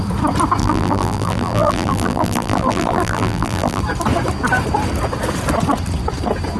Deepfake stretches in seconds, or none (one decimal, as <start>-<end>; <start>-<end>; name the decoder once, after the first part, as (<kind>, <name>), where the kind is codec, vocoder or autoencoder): 0.6-3.8 (vocoder, BigVGAN v2)